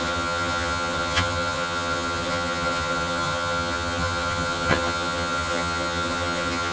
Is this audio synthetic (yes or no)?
yes